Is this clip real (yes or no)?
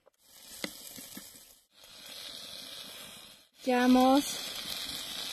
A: yes